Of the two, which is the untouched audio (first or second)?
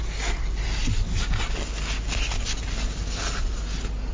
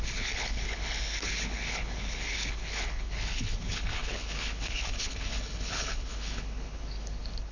first